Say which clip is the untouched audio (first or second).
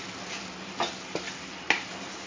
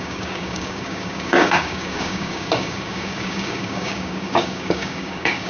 first